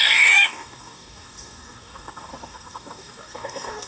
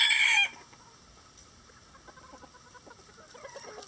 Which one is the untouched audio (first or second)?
second